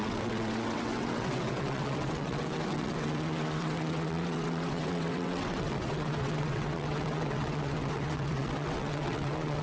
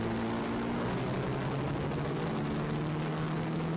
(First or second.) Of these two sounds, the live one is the second